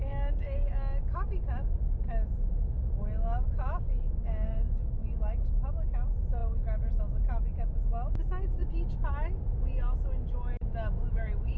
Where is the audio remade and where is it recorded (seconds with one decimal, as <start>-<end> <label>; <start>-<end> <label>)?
0.0-11.6 recorded